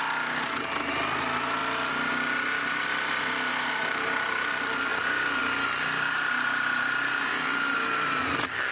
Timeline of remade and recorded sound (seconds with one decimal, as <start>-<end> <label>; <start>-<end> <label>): 0.0-8.7 recorded